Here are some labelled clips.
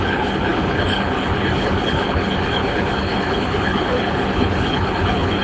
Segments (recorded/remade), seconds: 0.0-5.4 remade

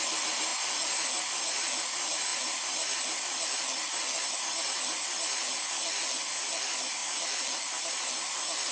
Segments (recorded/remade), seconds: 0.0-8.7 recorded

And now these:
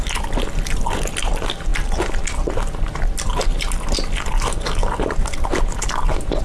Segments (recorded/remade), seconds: 0.0-6.4 recorded

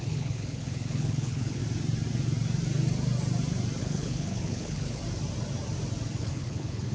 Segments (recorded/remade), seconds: 0.0-1.6 remade; 1.6-3.8 recorded; 3.8-5.0 remade; 5.0-6.2 recorded; 6.2-6.9 remade

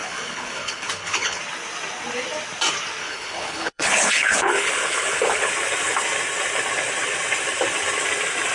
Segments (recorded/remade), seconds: 0.0-1.4 remade; 1.4-3.0 recorded; 3.0-5.5 remade; 5.5-8.5 recorded

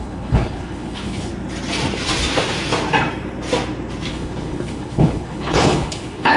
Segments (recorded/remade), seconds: 0.0-1.3 remade; 1.3-4.1 recorded; 4.1-6.4 remade